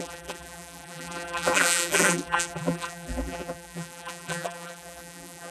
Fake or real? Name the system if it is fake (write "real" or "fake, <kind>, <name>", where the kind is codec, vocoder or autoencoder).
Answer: fake, vocoder, BigVGAN v2